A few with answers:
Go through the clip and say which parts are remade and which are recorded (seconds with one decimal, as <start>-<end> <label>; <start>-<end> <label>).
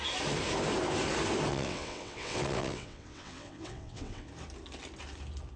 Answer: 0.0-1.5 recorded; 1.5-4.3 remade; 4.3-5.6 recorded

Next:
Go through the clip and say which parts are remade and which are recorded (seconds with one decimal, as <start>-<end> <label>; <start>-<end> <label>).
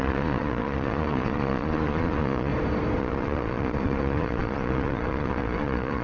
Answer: 0.0-2.5 remade; 2.5-3.0 recorded; 3.0-6.0 remade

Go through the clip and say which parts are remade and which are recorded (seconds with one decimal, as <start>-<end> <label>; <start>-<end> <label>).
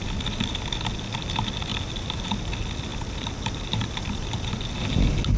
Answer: 0.0-2.9 recorded; 2.9-4.6 remade; 4.6-5.4 recorded